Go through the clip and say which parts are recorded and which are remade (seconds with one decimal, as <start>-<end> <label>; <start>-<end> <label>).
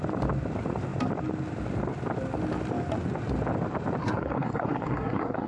0.0-4.0 recorded; 4.0-5.5 remade